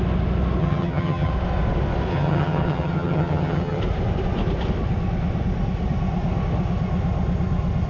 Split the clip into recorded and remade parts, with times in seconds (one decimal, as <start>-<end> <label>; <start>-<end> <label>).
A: 0.0-0.6 recorded; 0.6-1.3 remade; 1.3-2.1 recorded; 2.1-3.8 remade; 3.8-7.9 recorded